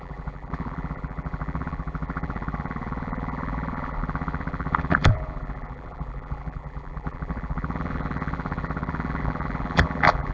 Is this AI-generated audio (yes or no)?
yes